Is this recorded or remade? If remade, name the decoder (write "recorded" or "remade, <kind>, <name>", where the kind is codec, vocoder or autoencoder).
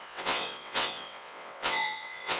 remade, vocoder, WaveNeXt